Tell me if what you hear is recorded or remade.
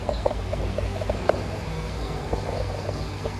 remade